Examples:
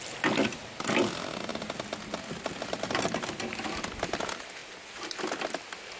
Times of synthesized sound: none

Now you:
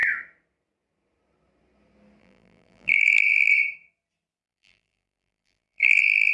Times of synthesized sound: 2.2-3.5; 4.4-6.3

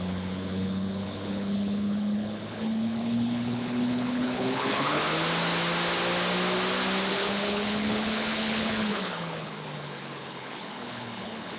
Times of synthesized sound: 0.0-5.0; 7.1-11.6

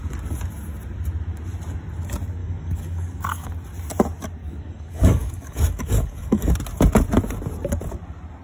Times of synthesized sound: 2.4-3.5; 4.4-6.5